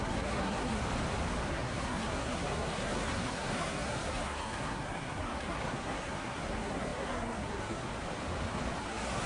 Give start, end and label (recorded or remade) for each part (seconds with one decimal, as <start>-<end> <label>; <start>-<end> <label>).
0.0-0.8 remade; 0.8-1.5 recorded; 1.5-7.9 remade; 7.9-8.8 recorded; 8.8-9.3 remade